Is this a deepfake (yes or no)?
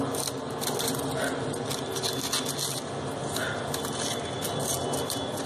no